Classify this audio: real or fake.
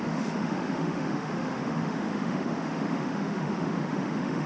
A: fake